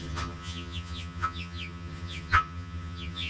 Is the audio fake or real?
fake